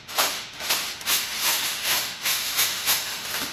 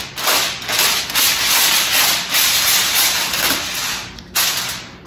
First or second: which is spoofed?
first